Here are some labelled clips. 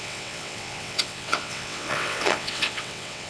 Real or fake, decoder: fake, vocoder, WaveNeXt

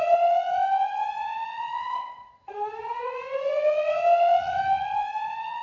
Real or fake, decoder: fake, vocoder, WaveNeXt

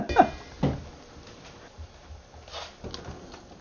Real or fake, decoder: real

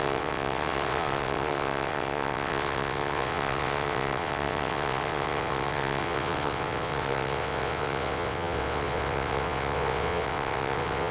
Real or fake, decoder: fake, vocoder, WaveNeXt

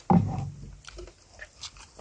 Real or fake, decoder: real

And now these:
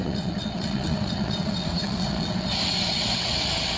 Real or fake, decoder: fake, vocoder, WaveNeXt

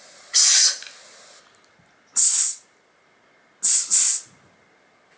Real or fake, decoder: real